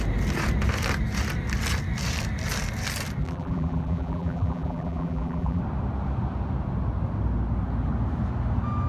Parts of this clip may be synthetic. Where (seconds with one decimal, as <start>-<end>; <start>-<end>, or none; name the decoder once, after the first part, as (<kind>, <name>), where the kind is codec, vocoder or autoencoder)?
3.2-5.6 (vocoder, BigVGAN v2)